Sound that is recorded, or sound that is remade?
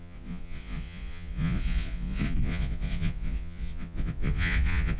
remade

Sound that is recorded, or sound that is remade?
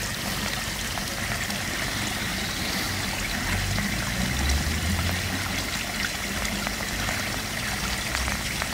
recorded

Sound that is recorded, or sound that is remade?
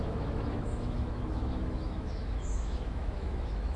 remade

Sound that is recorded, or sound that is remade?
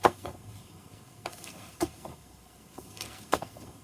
remade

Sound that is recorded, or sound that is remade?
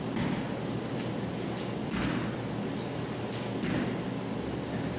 recorded